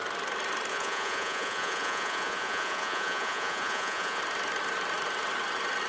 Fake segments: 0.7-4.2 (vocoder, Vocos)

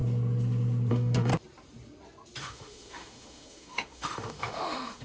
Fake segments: 0.9-1.3 (autoencoder, DAC-VAE); 2.4-5.0

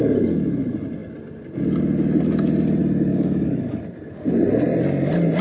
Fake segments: 3.1-3.8 (codec, DAC)

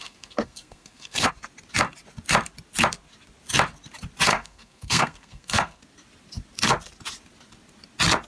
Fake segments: 0.0-1.3 (codec, SNAC); 4.3-5.8

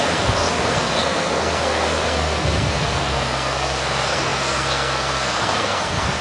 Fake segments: 0.0-6.2 (codec, SNAC)